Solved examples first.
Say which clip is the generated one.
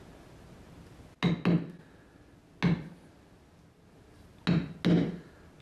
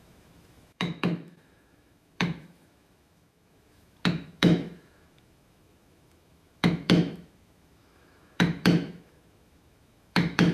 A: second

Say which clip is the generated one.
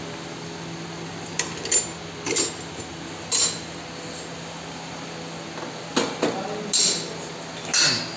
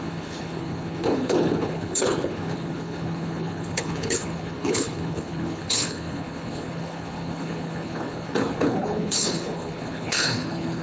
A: second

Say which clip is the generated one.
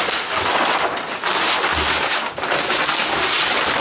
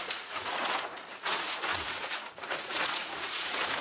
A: second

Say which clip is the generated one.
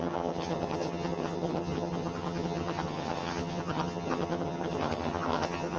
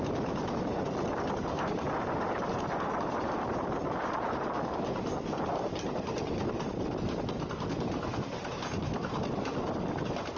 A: first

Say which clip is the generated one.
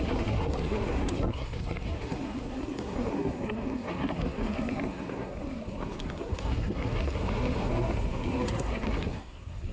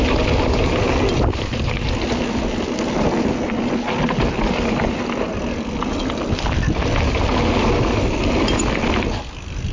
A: first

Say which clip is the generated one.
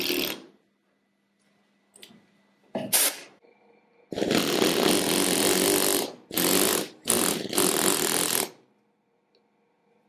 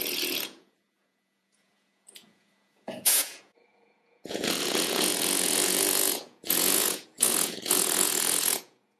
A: second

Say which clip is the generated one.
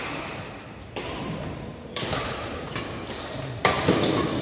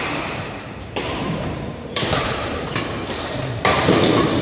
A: second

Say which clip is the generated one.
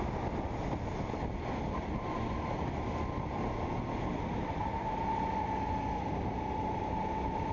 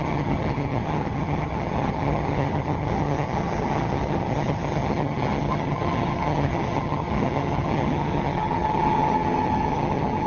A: second